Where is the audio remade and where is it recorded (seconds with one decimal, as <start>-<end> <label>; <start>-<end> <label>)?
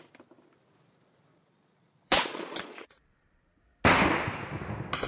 0.0-1.3 recorded; 1.3-3.6 remade; 3.6-5.1 recorded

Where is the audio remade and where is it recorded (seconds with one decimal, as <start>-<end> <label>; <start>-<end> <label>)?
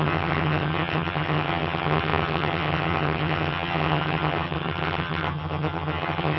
0.0-6.4 remade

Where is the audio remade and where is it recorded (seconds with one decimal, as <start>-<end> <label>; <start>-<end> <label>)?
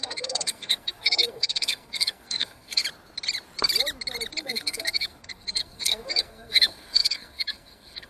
0.0-2.8 remade; 2.8-4.4 recorded; 4.4-8.1 remade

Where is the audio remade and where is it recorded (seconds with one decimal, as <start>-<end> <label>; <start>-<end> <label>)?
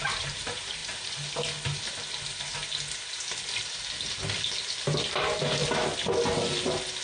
0.0-0.8 remade; 0.8-2.2 recorded; 2.2-2.6 remade; 2.6-5.1 recorded; 5.1-5.6 remade; 5.6-7.0 recorded